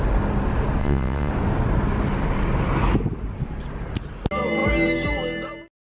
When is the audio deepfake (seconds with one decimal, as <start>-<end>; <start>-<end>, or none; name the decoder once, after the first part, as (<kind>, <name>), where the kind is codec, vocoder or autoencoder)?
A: 0.8-1.3 (vocoder, WaveNeXt)